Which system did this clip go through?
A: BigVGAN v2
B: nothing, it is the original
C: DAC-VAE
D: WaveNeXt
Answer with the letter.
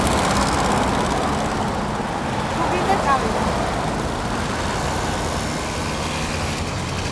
B